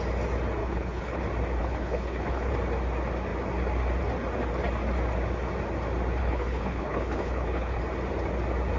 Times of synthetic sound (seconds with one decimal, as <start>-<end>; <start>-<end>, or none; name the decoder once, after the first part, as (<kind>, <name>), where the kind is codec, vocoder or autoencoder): 0.6-1.2 (codec, HILCodec); 1.6-2.5; 6.2-7.8